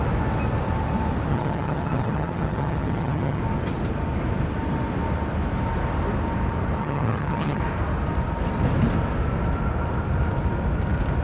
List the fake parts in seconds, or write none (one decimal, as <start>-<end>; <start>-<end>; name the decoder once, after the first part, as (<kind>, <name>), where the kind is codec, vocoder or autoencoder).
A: 1.3-3.4 (vocoder, HiFi-GAN); 6.8-7.6